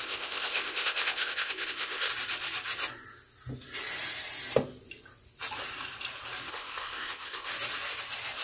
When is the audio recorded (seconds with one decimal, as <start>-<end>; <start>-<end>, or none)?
2.1-6.5; 7.5-8.4